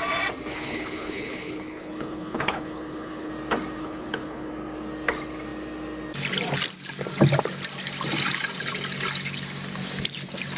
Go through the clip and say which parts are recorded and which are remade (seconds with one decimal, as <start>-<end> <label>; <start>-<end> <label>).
0.0-0.5 recorded; 0.5-3.3 remade; 3.3-3.8 recorded; 3.8-4.5 remade; 4.5-10.6 recorded